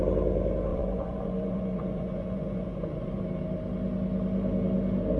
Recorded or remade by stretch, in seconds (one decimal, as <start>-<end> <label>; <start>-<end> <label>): 0.0-0.7 recorded; 0.7-3.2 remade; 3.2-5.2 recorded